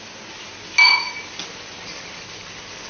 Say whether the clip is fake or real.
real